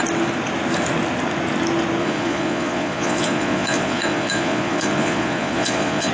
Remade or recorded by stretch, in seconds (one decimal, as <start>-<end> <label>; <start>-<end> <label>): 0.0-2.0 recorded; 2.0-6.1 remade